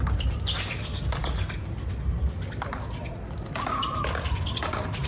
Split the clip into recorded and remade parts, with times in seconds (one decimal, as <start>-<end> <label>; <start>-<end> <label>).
0.0-5.1 recorded